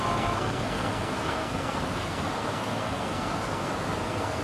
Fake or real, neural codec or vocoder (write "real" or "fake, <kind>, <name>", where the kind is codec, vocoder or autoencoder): fake, codec, SNAC